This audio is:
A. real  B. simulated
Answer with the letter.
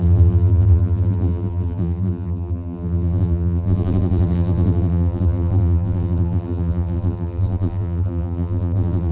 B